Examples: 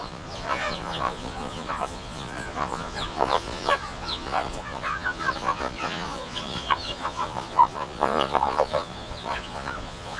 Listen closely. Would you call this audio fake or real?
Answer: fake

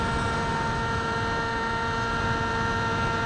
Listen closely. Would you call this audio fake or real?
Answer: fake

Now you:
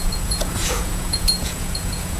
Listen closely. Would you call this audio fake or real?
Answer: fake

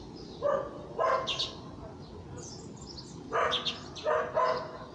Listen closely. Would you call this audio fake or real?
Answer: real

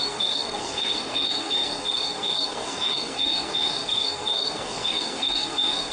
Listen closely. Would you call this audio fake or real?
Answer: fake